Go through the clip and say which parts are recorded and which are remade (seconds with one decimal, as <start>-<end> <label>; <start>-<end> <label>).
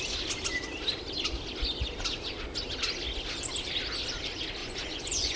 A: 0.0-4.6 recorded; 4.6-5.4 remade